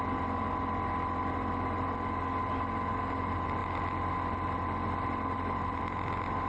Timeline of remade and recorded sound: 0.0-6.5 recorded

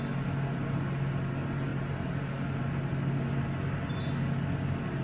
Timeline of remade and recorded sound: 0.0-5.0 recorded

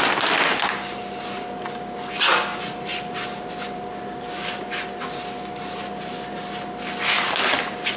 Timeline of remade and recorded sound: 0.0-8.0 recorded

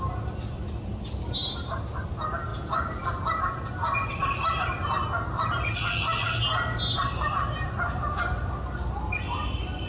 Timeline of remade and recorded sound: 0.0-9.9 recorded

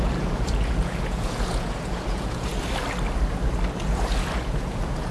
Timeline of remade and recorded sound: 0.0-2.5 remade; 2.5-3.8 recorded; 3.8-5.1 remade